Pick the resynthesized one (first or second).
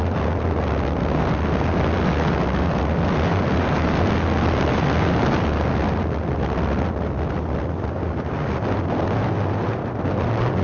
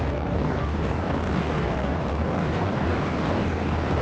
second